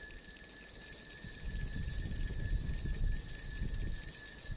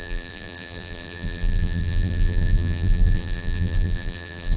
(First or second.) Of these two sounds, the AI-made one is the second